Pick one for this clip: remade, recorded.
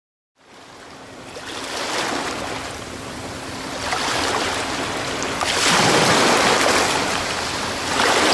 recorded